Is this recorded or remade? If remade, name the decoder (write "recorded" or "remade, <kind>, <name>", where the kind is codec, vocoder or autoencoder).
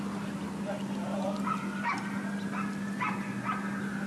recorded